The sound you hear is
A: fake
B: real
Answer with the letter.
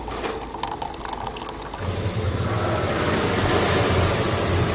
B